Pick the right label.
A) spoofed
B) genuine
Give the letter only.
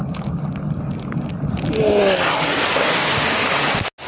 B